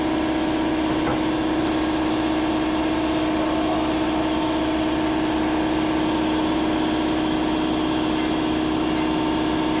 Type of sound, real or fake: real